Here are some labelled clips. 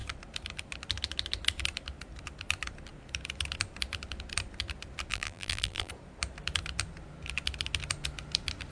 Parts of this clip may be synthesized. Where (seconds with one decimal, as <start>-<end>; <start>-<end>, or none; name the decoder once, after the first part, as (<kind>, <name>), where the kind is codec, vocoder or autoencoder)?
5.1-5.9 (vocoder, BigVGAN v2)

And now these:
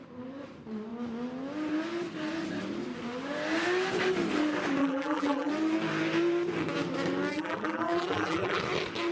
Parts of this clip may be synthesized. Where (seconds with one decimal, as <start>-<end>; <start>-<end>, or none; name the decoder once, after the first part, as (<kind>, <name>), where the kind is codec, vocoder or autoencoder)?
4.8-5.5 (vocoder, BigVGAN v2); 7.3-8.6

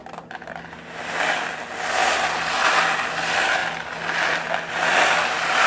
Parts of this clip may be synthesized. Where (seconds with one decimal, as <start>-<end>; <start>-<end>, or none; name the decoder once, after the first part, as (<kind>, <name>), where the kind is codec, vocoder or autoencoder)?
none

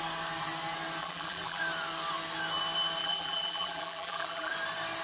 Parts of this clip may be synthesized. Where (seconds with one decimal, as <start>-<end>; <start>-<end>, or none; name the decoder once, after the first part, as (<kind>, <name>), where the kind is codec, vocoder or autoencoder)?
1.0-1.6 (vocoder, BigVGAN v2); 3.0-4.5

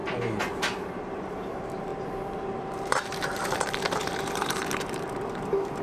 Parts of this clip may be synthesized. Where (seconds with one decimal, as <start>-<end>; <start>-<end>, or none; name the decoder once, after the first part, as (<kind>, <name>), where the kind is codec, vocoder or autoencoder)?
0.5-5.8 (vocoder, BigVGAN v2)

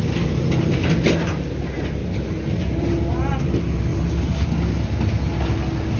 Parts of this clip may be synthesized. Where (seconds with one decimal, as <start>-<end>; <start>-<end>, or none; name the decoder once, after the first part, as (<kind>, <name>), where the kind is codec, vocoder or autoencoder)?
2.0-3.4 (vocoder, BigVGAN v2); 3.9-4.5